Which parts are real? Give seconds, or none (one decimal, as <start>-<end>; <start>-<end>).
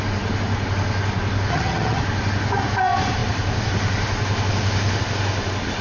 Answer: 0.0-1.5; 2.0-5.8